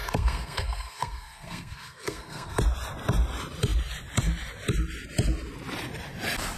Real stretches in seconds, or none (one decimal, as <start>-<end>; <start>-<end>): 2.6-6.6